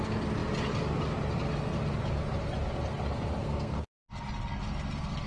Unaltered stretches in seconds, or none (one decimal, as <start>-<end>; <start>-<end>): 0.0-3.4; 4.0-5.3